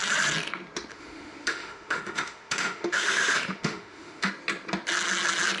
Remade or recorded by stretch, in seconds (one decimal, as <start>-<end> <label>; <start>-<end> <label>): 0.0-0.9 recorded; 0.9-4.3 remade; 4.3-5.6 recorded